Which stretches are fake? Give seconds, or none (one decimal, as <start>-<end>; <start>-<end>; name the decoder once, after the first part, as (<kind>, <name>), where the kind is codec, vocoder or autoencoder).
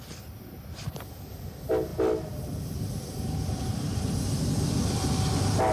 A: none